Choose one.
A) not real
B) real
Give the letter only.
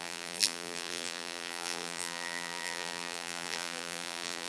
A